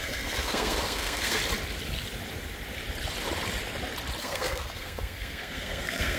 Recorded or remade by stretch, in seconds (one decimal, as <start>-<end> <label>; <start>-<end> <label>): 0.0-1.4 remade; 1.4-4.2 recorded; 4.2-6.2 remade